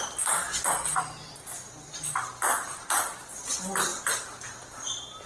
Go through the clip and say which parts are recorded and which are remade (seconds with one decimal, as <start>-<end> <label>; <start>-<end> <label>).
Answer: 0.0-5.3 recorded